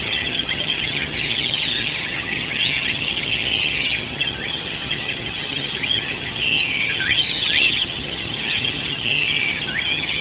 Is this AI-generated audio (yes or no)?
yes